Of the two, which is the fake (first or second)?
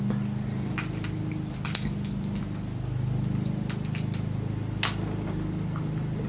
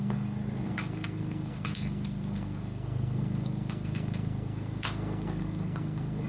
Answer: second